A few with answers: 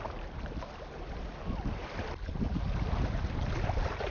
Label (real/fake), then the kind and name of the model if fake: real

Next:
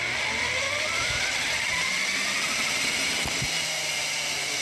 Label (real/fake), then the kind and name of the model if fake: real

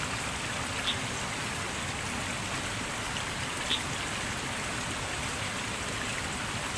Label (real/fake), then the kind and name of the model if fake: real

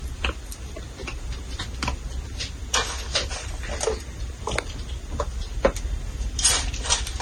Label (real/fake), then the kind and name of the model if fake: real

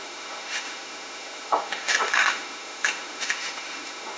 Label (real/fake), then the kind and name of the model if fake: fake, autoencoder, DAC-VAE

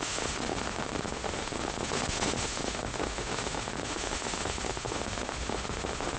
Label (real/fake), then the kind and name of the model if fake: fake, autoencoder, DAC-VAE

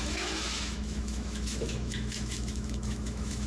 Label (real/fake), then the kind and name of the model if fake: fake, autoencoder, DAC-VAE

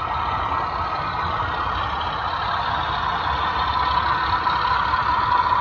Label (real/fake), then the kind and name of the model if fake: real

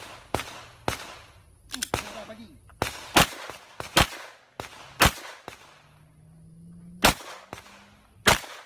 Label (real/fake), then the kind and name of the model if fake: real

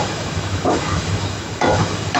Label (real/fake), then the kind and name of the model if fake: fake, autoencoder, DAC-VAE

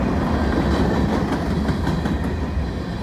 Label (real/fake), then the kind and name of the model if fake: real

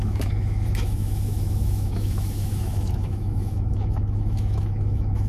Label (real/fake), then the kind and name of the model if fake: fake, autoencoder, DAC-VAE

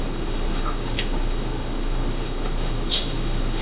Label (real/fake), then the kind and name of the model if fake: fake, autoencoder, DAC-VAE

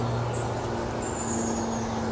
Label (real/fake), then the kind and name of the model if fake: real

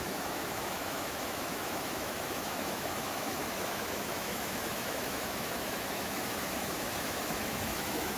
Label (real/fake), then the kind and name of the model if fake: fake, autoencoder, DAC-VAE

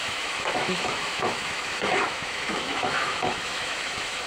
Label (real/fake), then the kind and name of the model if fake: fake, autoencoder, DAC-VAE